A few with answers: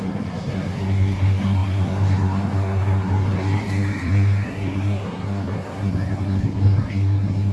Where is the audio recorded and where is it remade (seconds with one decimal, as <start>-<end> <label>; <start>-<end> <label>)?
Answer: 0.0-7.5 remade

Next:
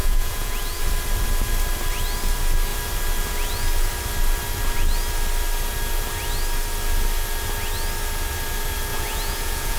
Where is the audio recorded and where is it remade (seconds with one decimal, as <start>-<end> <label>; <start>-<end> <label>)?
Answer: 0.0-0.8 remade; 0.8-8.9 recorded; 8.9-9.8 remade

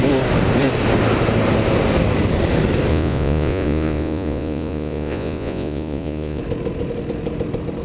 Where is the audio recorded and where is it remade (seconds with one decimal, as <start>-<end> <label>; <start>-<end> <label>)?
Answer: 0.0-2.9 recorded; 2.9-6.4 remade; 6.4-7.8 recorded

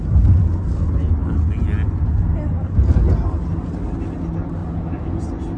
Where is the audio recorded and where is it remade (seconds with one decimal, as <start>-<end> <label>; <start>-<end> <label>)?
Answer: 0.0-5.6 recorded